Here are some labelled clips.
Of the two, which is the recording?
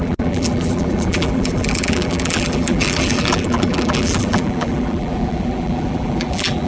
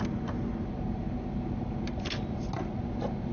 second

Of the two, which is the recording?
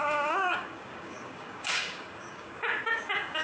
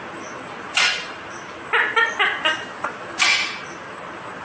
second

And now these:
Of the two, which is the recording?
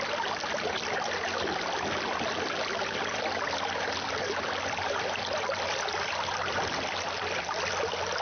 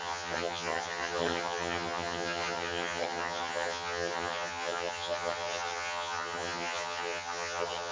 first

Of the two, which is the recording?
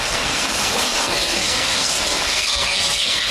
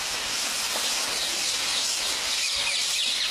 second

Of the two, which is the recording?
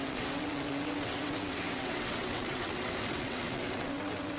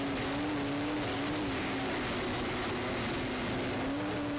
second